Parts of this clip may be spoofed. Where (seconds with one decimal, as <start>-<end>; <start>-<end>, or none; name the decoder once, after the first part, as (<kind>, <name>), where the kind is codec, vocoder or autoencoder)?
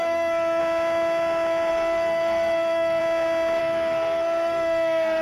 0.0-0.6 (codec, SNAC); 1.7-3.0; 3.6-5.2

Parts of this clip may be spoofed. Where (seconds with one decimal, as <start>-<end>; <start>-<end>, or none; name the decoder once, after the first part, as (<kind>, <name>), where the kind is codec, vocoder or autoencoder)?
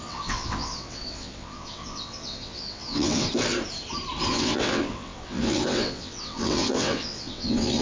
0.0-3.3 (vocoder, WaveNeXt); 4.3-7.8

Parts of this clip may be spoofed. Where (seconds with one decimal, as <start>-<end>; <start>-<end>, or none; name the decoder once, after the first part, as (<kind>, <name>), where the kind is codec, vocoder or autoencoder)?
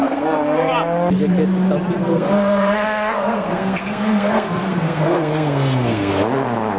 0.0-0.7 (codec, SNAC); 2.0-6.1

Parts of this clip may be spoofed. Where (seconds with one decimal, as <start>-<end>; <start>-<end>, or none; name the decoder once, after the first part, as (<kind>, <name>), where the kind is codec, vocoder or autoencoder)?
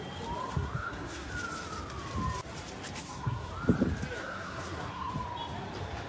0.5-1.3 (codec, SNAC); 3.0-3.5; 4.2-5.1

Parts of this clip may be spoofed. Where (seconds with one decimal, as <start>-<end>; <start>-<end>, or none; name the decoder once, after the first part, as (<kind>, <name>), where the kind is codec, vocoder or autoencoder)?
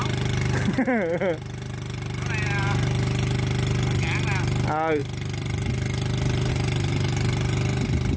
none